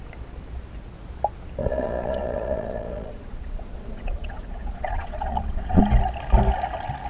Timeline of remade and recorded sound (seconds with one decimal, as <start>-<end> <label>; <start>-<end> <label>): 0.0-1.6 recorded; 1.6-5.8 remade; 5.8-7.1 recorded

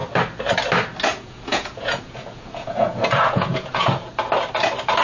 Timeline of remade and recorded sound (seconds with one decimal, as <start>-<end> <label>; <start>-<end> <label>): 0.0-1.1 recorded; 1.1-4.1 remade; 4.1-5.0 recorded

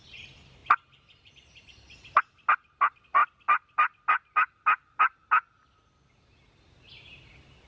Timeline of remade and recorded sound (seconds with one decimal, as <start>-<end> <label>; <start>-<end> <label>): 0.0-7.7 recorded

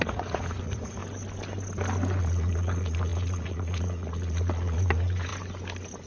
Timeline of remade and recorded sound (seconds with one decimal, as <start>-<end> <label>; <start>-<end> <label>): 0.0-1.0 remade; 1.0-2.2 recorded; 2.2-5.3 remade; 5.3-6.1 recorded